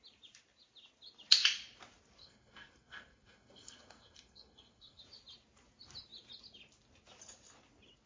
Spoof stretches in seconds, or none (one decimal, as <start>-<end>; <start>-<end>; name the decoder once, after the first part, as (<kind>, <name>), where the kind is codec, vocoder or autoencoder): 2.2-5.0 (codec, SNAC)